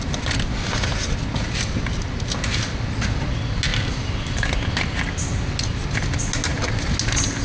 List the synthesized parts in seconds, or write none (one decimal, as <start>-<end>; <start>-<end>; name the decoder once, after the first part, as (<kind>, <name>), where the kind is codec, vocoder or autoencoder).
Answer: none